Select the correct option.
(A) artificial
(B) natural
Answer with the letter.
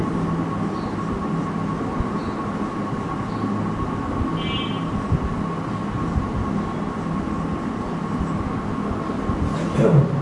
B